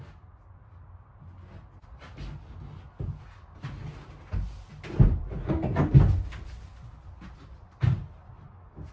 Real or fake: real